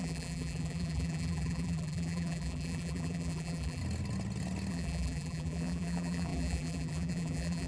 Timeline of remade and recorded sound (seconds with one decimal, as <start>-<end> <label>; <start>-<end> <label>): 0.0-3.8 remade; 3.8-4.7 recorded; 4.7-7.7 remade